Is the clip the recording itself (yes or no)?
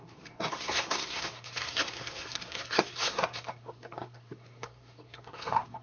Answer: no